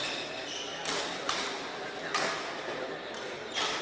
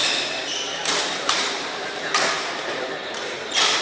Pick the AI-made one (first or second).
second